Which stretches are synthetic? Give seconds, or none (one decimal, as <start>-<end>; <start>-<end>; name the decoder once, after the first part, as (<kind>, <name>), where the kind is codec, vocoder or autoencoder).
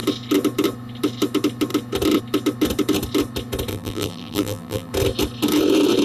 3.7-4.9 (vocoder, BigVGAN v2)